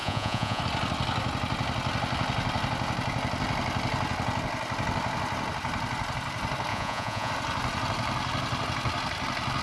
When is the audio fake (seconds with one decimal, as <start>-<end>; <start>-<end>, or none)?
0.0-0.6; 6.7-7.3